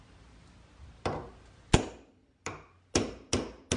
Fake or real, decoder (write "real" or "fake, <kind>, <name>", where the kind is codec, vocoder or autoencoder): real